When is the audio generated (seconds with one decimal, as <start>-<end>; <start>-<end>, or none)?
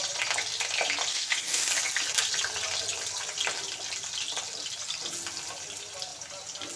1.1-1.7